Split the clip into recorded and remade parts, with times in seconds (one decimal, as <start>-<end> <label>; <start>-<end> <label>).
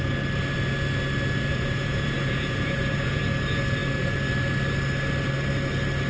0.0-1.5 recorded; 1.5-3.2 remade; 3.2-6.1 recorded